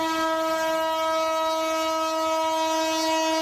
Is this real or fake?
real